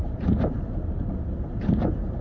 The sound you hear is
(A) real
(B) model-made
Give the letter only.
A